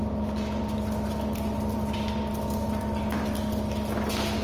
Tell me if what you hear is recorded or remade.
recorded